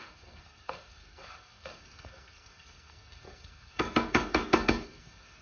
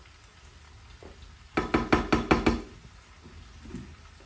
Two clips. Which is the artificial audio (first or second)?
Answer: first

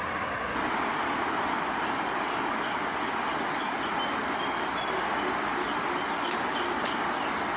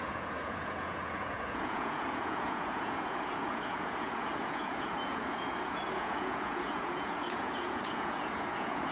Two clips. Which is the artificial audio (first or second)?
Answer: second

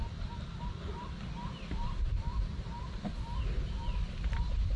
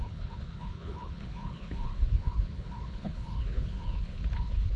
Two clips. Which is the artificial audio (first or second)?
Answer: second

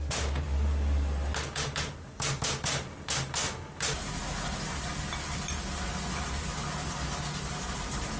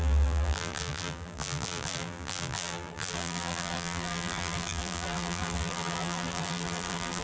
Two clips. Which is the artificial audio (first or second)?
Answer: second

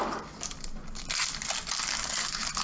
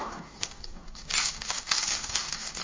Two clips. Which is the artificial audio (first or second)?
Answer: second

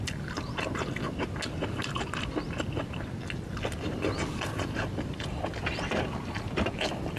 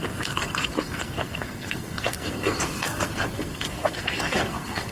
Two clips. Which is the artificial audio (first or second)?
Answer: second